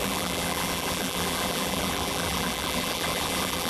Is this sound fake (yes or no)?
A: yes